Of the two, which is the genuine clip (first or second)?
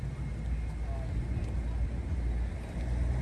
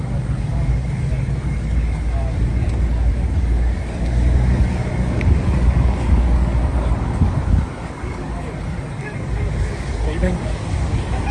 first